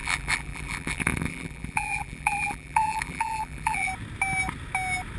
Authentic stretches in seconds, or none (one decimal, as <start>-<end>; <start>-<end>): 3.9-5.2